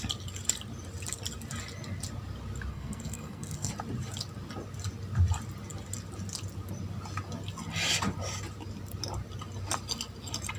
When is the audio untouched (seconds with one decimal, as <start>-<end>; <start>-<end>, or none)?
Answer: 0.0-2.7; 3.7-10.6